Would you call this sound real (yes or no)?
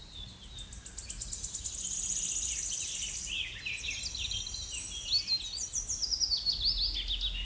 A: yes